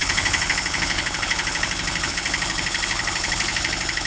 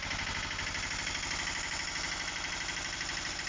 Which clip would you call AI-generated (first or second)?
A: first